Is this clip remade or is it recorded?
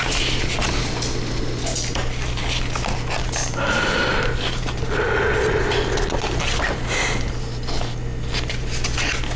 recorded